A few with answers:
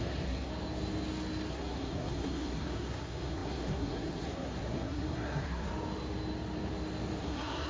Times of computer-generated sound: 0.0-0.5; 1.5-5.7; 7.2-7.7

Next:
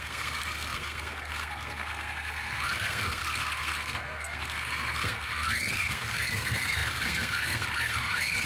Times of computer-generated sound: 0.0-8.5